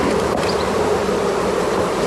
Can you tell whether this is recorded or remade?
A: recorded